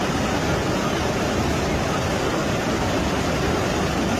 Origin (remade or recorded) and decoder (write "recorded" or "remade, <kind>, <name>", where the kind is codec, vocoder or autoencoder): recorded